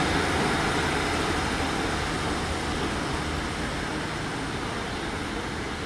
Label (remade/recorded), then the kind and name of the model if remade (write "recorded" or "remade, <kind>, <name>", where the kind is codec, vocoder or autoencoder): recorded